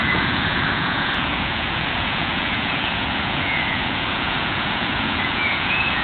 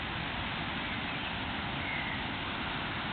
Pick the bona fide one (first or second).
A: second